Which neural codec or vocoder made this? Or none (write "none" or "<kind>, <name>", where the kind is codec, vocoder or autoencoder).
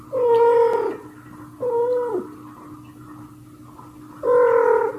none